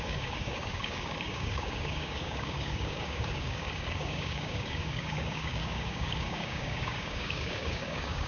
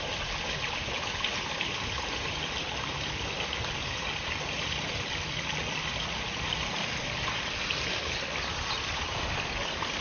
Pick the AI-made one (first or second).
first